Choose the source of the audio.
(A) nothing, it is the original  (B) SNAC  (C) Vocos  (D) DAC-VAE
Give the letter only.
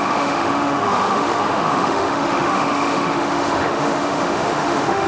D